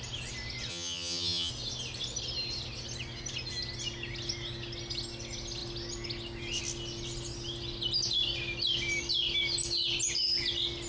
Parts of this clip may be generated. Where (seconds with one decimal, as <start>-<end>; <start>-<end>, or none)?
0.7-1.5